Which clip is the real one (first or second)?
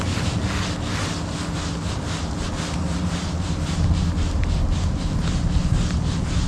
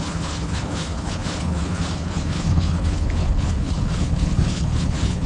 first